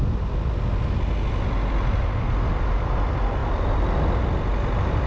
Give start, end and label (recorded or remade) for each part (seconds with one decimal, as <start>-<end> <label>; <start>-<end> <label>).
0.0-5.1 recorded